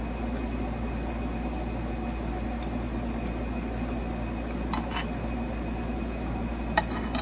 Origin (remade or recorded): recorded